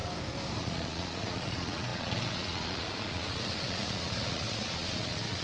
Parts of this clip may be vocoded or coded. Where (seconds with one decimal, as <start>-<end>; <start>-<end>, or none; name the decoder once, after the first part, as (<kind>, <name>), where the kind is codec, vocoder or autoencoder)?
0.6-5.4 (vocoder, Vocos)